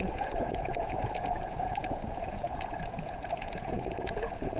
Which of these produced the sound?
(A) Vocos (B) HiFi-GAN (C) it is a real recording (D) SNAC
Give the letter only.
A